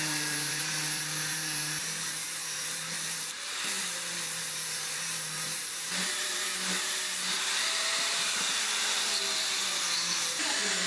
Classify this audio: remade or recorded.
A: remade